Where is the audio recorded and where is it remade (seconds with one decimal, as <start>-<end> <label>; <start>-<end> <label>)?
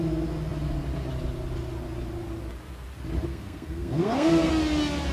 0.0-3.3 recorded; 3.3-4.5 remade; 4.5-5.1 recorded